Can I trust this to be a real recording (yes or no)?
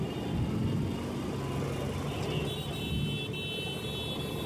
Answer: yes